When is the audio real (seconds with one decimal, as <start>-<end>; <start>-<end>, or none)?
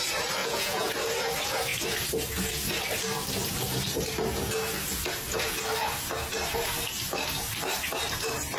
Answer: 0.0-0.4; 0.9-8.6